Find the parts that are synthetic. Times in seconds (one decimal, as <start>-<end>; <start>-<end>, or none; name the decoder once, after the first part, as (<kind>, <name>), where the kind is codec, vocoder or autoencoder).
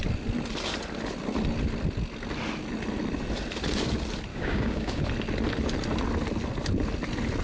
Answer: 4.3-5.0 (codec, DAC)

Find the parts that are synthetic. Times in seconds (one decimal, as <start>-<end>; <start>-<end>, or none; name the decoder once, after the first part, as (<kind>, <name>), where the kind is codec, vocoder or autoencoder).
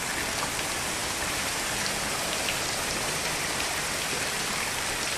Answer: 1.0-4.1 (vocoder, BigVGAN v2)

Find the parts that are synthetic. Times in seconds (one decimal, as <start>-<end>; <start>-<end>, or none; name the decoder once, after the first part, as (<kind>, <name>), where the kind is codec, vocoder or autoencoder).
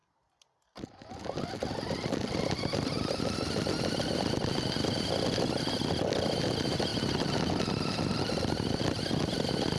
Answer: none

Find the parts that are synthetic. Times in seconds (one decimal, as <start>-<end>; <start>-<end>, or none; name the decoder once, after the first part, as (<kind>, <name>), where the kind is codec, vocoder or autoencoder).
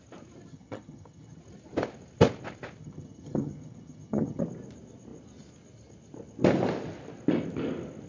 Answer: 0.5-1.4 (vocoder, HiFi-GAN); 2.8-4.4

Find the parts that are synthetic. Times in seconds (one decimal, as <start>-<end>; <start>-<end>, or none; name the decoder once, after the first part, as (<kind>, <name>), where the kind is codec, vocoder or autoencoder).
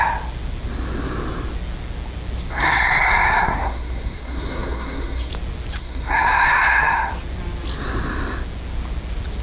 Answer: 2.5-5.3 (codec, SNAC); 5.8-7.1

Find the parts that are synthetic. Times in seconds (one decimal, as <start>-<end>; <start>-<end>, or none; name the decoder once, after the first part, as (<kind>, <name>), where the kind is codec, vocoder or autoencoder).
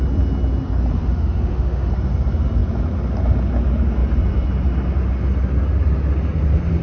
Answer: 1.0-1.9 (autoencoder, DAC-VAE)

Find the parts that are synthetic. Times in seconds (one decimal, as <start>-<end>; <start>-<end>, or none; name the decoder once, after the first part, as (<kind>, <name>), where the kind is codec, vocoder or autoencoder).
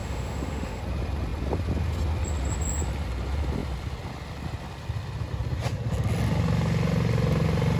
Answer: 0.0-0.8 (autoencoder, DAC-VAE)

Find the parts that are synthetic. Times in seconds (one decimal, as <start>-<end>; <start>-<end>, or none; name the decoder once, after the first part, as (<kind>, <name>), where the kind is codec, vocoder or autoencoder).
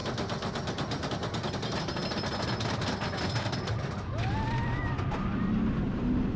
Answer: none